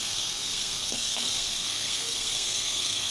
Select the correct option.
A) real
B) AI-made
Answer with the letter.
B